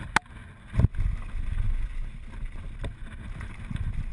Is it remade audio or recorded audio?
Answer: recorded